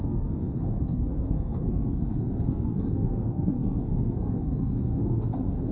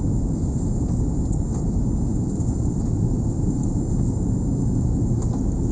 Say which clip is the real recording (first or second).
second